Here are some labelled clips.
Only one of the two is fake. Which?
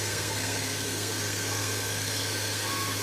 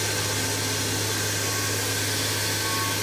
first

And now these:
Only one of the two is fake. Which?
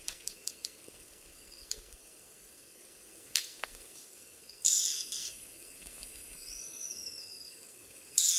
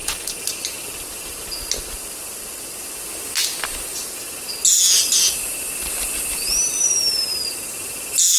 first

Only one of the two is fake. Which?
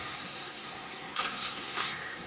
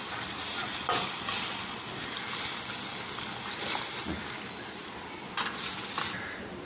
first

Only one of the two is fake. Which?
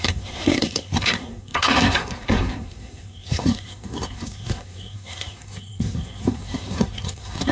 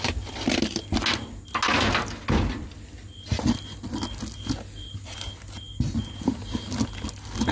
first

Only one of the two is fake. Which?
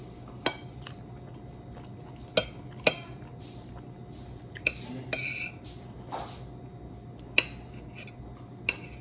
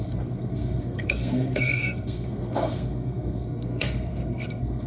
second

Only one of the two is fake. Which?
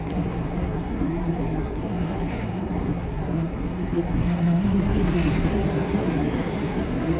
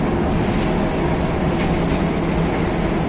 first